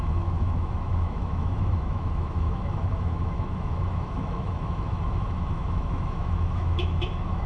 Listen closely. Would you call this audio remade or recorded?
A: remade